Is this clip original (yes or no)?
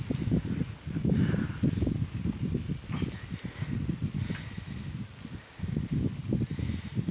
yes